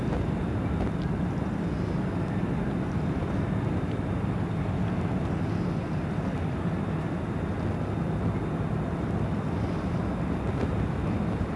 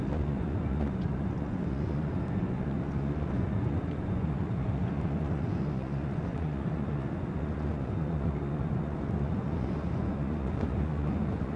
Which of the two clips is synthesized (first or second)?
second